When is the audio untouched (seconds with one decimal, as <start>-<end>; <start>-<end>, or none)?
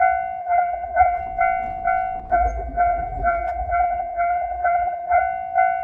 0.0-0.4; 1.2-2.3; 5.2-5.8